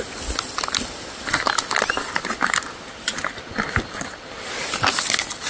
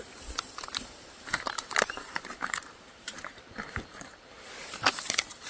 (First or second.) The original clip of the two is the first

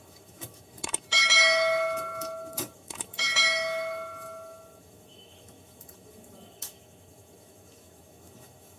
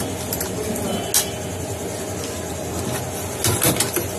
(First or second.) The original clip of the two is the second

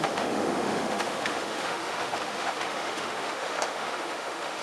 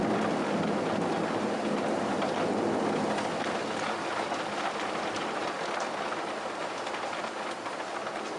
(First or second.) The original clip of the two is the second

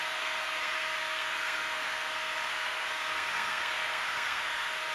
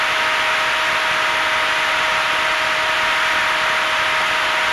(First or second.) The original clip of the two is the second